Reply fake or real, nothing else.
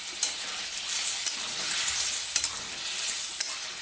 real